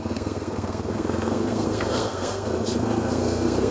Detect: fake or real fake